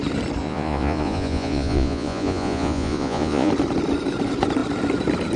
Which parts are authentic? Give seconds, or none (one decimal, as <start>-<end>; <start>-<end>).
0.0-0.4; 3.5-5.4